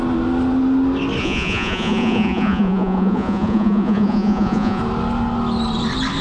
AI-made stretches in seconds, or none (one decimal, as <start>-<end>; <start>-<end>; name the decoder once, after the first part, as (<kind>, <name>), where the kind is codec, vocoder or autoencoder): 1.2-4.8 (vocoder, Vocos)